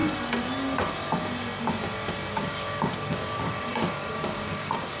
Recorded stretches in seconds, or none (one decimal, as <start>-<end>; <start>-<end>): 0.0-2.3